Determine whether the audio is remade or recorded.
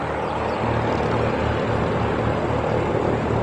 recorded